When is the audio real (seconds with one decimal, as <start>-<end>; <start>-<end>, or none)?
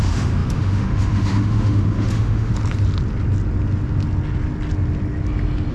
2.5-5.7